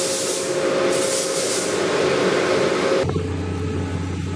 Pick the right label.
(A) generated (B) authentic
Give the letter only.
B